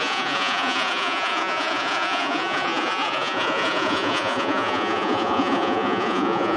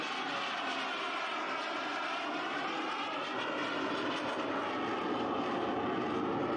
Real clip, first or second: second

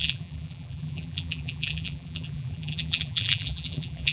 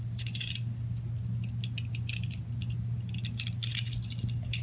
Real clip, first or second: second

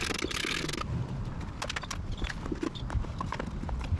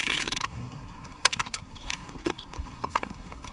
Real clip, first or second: first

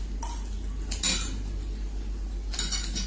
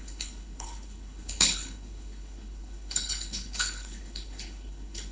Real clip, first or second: first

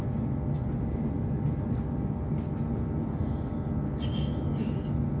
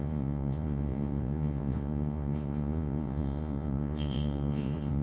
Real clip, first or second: first